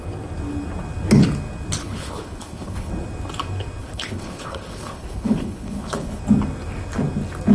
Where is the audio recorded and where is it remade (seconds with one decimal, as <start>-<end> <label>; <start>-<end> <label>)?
0.0-1.8 recorded; 1.8-2.9 remade; 2.9-3.8 recorded; 3.8-6.2 remade; 6.2-7.5 recorded